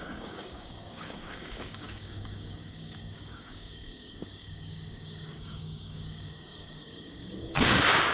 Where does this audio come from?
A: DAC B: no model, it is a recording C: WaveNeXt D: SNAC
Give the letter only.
A